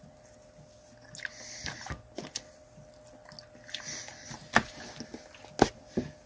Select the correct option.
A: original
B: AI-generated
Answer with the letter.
A